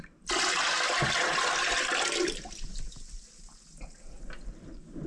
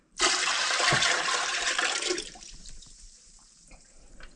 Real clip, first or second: first